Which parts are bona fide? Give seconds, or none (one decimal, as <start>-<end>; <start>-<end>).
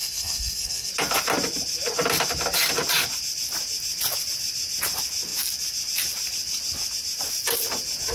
0.9-8.1